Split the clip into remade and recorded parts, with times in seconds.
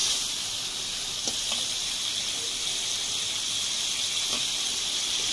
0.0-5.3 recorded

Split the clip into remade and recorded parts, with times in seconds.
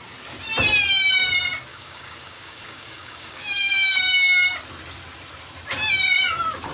0.0-1.7 recorded; 1.7-4.4 remade; 4.4-6.7 recorded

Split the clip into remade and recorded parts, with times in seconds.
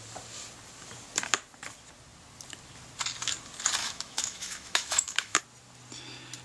0.0-3.8 recorded; 3.8-5.4 remade; 5.4-6.4 recorded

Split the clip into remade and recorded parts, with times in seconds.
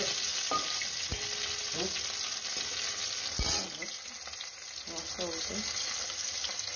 0.0-6.8 recorded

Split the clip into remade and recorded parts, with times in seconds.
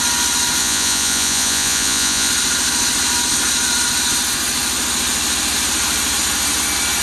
0.0-0.6 recorded; 0.6-2.3 remade; 2.3-7.0 recorded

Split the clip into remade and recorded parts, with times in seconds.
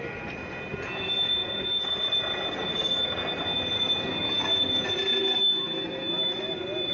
0.0-6.9 recorded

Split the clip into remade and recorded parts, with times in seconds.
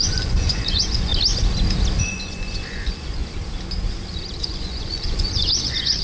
0.0-1.1 remade; 1.1-2.0 recorded; 2.0-3.2 remade; 3.2-4.4 recorded; 4.4-6.0 remade